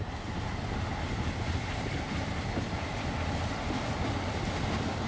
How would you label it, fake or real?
real